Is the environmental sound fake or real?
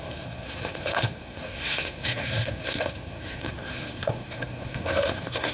fake